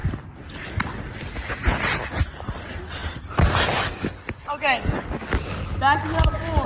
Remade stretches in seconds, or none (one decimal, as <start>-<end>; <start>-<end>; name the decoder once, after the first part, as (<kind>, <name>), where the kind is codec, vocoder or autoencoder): none